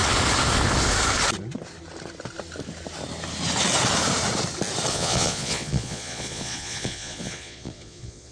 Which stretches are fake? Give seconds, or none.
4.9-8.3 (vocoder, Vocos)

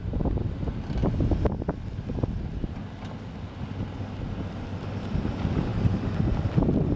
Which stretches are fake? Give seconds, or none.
none